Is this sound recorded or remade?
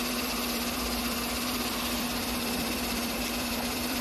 remade